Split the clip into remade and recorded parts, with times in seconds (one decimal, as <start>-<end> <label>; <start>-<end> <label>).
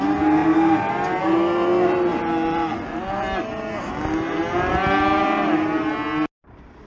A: 0.0-6.9 recorded